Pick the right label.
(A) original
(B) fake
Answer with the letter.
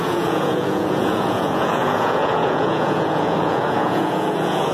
B